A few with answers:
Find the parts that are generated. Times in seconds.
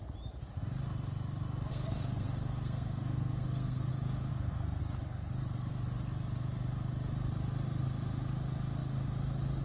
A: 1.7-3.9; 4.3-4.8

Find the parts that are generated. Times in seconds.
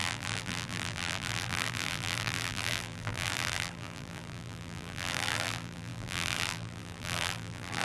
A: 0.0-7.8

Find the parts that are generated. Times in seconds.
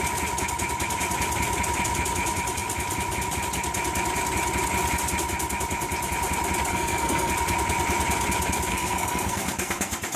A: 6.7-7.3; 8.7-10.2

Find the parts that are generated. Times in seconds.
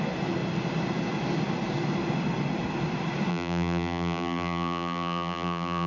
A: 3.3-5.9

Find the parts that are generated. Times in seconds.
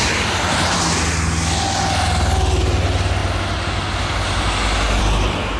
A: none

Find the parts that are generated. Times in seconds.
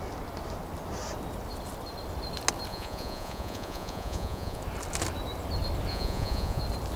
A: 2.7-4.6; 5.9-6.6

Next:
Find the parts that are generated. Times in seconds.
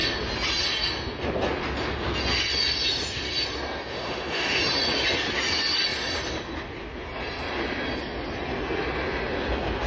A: 3.9-4.6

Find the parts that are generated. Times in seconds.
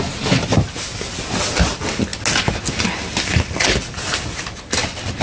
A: none